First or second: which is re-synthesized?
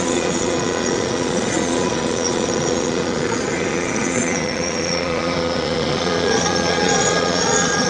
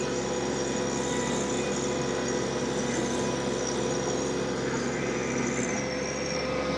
first